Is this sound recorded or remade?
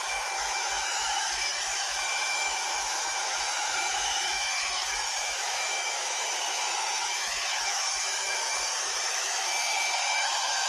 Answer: remade